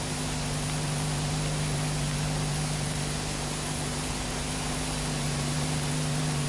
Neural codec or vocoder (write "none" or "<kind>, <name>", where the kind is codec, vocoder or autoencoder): none